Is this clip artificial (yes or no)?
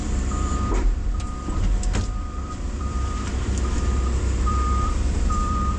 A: yes